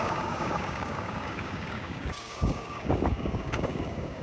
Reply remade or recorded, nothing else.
remade